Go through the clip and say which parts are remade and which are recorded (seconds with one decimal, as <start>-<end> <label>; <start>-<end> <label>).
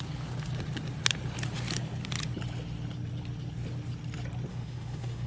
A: 0.0-4.5 recorded; 4.5-5.3 remade